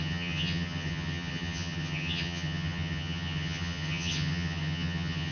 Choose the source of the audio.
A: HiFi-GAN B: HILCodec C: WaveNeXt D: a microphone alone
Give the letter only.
A